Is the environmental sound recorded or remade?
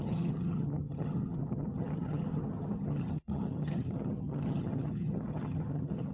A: remade